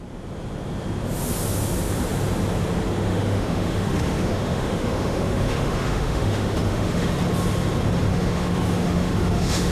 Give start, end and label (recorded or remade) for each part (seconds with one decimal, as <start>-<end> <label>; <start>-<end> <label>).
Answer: 0.0-3.1 recorded; 3.1-7.1 remade; 7.1-8.1 recorded; 8.1-9.7 remade